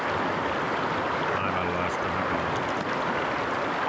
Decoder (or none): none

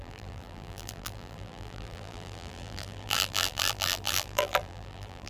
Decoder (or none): vocoder, BigVGAN v2